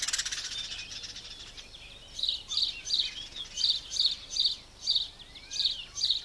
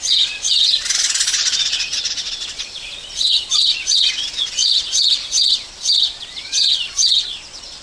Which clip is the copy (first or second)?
second